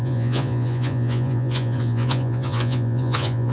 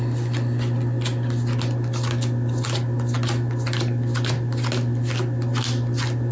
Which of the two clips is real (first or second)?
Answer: second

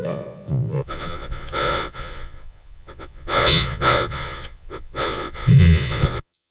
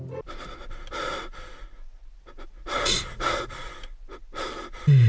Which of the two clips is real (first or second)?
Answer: second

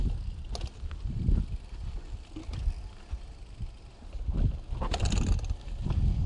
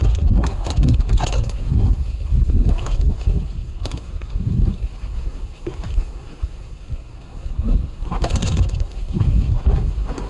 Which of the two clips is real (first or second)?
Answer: first